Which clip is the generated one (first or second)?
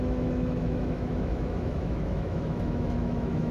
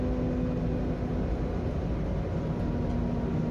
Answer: first